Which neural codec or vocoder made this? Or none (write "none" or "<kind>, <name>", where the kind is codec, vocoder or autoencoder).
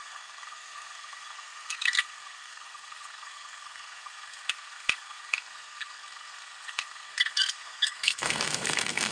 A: codec, SNAC